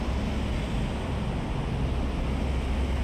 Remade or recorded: recorded